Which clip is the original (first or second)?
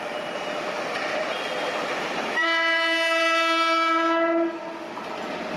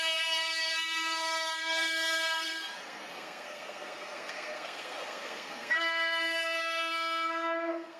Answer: first